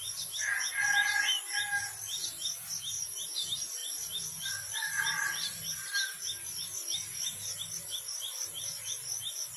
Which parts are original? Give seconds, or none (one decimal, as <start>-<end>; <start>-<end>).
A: 0.0-9.6